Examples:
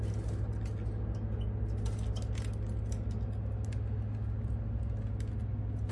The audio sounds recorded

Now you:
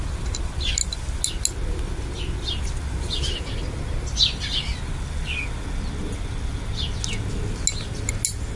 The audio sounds recorded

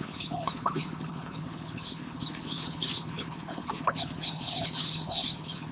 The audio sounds remade